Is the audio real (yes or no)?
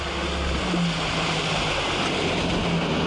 yes